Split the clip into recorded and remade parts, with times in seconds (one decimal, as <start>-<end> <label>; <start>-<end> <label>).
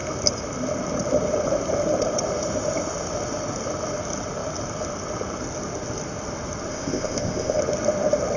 0.0-6.7 recorded; 6.7-7.6 remade; 7.6-8.4 recorded